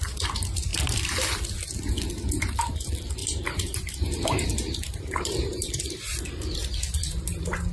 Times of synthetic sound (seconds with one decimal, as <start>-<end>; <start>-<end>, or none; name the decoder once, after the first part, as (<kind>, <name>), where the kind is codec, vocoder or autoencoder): 3.2-5.9 (vocoder, BigVGAN v2)